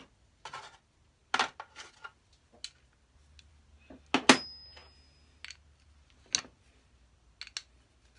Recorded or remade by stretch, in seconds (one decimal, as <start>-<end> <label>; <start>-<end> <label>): 0.0-8.2 recorded